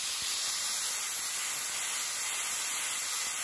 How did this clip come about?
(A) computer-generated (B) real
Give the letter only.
B